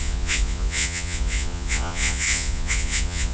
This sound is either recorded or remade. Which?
remade